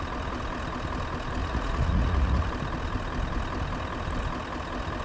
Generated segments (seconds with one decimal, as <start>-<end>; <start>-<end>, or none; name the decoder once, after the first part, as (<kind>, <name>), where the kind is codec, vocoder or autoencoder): 1.4-2.5 (vocoder, Vocos)